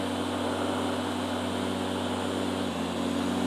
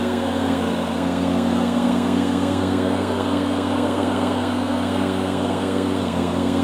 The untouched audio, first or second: first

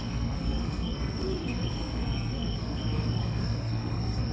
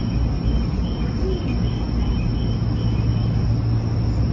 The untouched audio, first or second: second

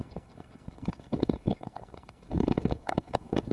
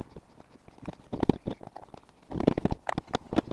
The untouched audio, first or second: second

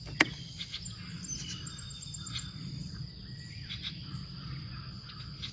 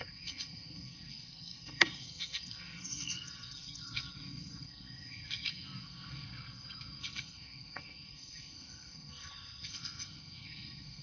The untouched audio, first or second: first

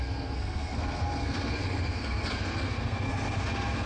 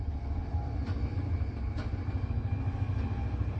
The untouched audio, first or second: second